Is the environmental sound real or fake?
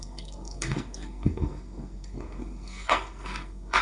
fake